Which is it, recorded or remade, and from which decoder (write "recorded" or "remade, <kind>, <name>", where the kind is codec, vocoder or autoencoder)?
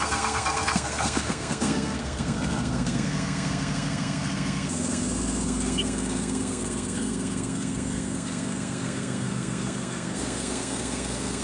remade, codec, SNAC